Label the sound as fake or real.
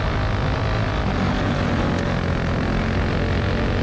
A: real